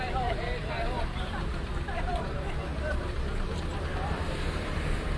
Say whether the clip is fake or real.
fake